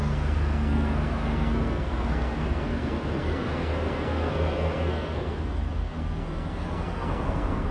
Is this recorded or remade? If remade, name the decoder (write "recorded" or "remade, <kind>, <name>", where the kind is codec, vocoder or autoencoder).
remade, codec, SNAC